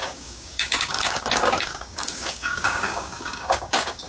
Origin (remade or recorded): remade